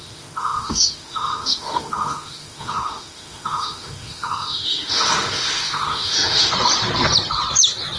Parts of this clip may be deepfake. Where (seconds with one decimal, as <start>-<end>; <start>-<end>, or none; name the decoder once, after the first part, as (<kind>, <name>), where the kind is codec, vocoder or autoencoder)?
0.0-6.5 (autoencoder, DAC-VAE)